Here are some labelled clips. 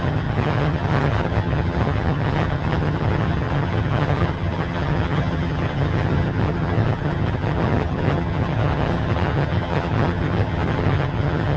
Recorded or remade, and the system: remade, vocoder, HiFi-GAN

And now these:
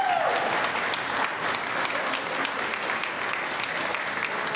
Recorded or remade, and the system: recorded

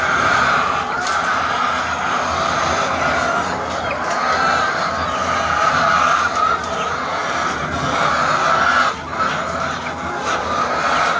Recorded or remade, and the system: recorded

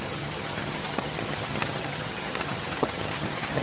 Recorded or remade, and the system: remade, vocoder, HiFi-GAN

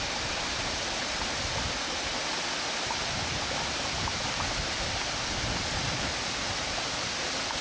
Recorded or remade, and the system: recorded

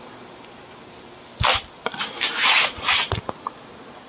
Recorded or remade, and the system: recorded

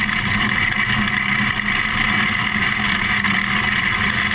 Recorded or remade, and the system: recorded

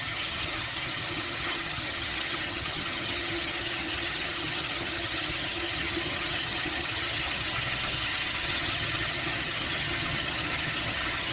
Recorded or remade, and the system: remade, vocoder, HiFi-GAN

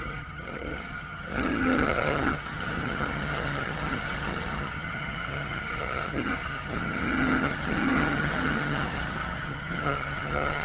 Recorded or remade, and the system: remade, vocoder, HiFi-GAN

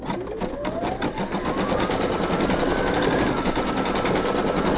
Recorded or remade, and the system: recorded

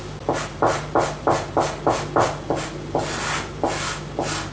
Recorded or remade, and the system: recorded